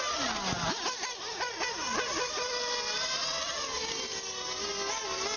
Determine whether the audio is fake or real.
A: real